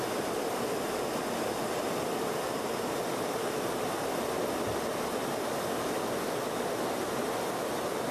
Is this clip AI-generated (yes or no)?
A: no